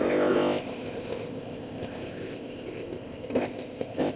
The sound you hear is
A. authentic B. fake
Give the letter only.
B